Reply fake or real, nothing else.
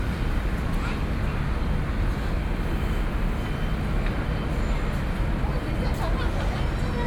real